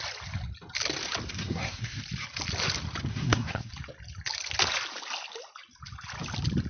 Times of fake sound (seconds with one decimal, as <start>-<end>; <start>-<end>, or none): 1.3-2.0; 3.1-3.7